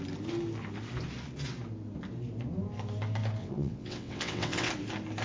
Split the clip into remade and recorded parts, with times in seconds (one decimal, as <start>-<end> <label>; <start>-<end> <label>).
0.0-3.4 recorded; 3.4-4.7 remade; 4.7-5.2 recorded